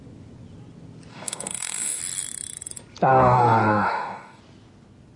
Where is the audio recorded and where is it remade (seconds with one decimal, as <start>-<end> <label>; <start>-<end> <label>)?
0.0-1.1 recorded; 1.1-2.0 remade; 2.0-3.1 recorded; 3.1-4.4 remade; 4.4-5.2 recorded